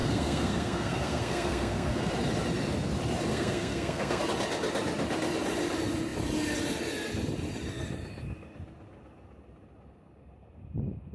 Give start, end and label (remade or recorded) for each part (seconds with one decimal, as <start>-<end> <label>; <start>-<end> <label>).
0.0-2.1 remade; 2.1-3.3 recorded; 3.3-4.2 remade; 4.2-11.1 recorded